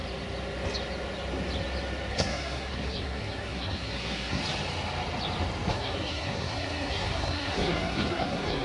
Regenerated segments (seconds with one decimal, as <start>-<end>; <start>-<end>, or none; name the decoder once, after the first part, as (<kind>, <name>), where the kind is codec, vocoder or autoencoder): 2.1-4.4 (codec, SNAC); 5.7-8.6